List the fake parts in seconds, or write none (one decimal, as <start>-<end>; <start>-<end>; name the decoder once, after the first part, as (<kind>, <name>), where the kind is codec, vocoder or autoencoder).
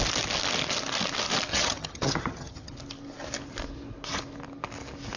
1.5-2.7 (vocoder, HiFi-GAN)